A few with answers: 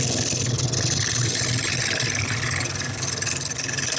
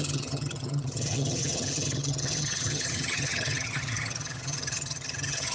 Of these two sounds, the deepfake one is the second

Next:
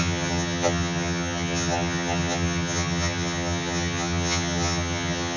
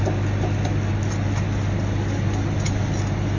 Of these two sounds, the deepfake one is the first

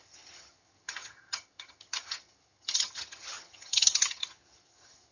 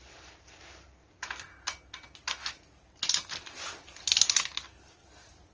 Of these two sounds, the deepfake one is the first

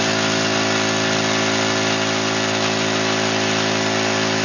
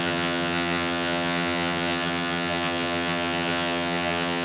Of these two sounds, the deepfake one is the second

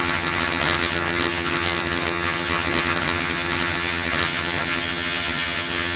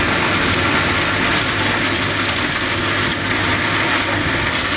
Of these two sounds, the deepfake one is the first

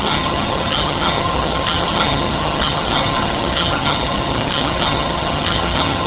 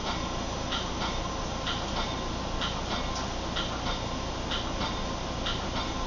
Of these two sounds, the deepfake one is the first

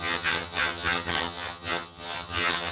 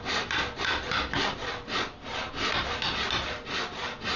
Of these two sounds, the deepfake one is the first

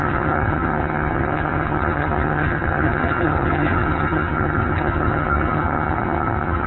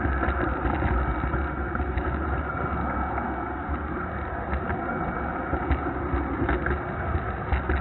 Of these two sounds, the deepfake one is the first